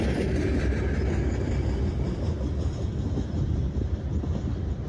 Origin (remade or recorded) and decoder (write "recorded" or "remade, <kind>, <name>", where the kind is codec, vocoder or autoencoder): recorded